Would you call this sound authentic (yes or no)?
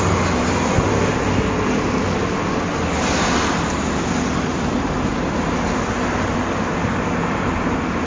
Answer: yes